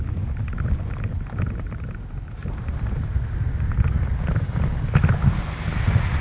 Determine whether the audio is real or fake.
real